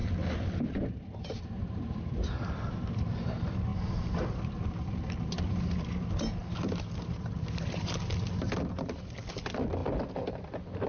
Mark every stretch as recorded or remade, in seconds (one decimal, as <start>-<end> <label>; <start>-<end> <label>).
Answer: 0.0-3.1 remade; 3.1-10.9 recorded